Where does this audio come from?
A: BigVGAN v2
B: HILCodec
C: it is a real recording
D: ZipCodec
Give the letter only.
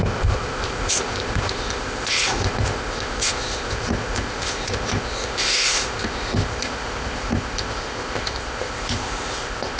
D